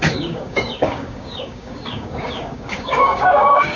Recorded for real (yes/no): no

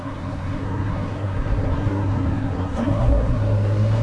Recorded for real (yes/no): no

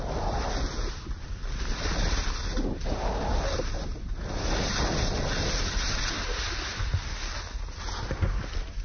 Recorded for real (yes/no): yes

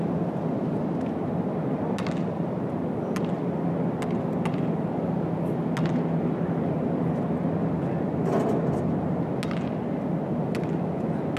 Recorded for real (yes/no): yes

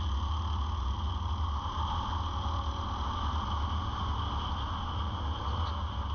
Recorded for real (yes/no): yes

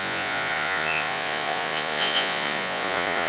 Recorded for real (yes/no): no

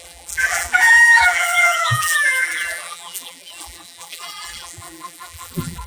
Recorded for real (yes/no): no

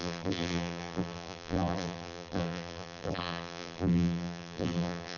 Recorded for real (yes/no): no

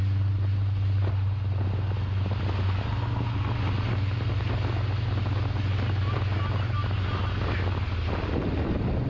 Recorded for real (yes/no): yes